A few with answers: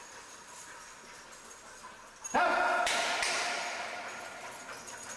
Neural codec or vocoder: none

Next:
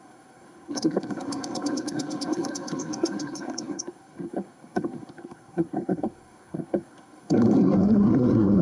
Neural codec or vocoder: codec, SNAC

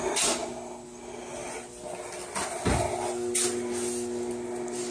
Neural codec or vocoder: none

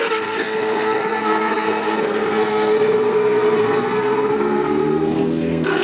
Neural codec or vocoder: codec, SNAC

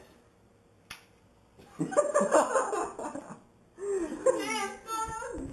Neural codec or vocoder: none